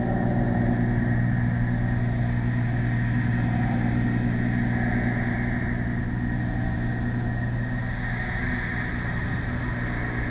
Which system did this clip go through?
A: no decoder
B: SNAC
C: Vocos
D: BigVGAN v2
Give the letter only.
A